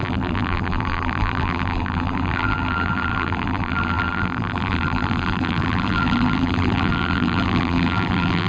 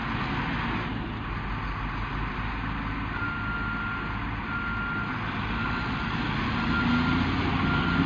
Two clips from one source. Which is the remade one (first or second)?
first